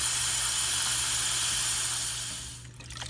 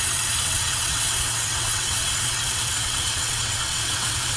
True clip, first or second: first